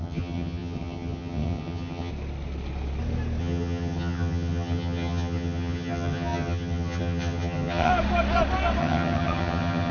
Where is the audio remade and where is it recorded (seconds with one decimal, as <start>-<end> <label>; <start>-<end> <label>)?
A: 0.0-2.1 remade; 2.1-3.4 recorded; 3.4-7.9 remade; 7.9-8.8 recorded; 8.8-9.9 remade